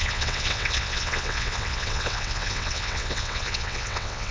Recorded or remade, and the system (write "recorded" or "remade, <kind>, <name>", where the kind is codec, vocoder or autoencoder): remade, vocoder, WaveNeXt